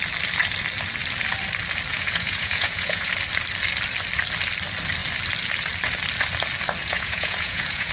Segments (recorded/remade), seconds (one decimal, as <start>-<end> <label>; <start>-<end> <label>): 0.0-1.9 recorded; 1.9-3.1 remade; 3.1-6.8 recorded; 6.8-7.9 remade